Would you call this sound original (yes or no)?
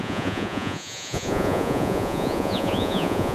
no